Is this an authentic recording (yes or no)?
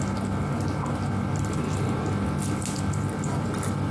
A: yes